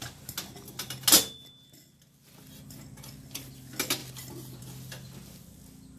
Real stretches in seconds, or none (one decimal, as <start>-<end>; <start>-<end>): 0.0-6.0

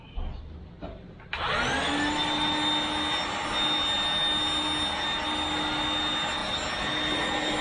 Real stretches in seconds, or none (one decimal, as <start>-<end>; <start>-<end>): 0.0-7.6

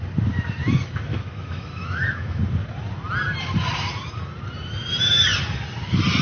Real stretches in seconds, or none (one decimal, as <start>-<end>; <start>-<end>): 0.0-1.1; 2.4-6.2

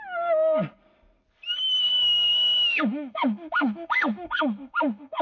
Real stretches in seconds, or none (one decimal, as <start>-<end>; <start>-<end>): 0.0-1.9

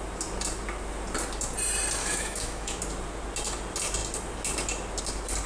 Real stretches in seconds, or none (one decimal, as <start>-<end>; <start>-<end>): 0.0-2.0; 2.8-5.5

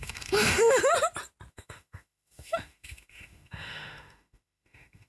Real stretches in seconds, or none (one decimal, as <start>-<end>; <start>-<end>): 0.8-1.5

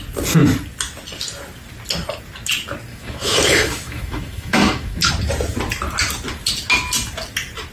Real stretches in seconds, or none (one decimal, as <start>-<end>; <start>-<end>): 0.0-2.9; 5.1-7.7

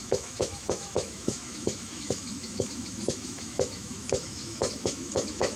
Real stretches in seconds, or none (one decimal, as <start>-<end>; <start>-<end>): none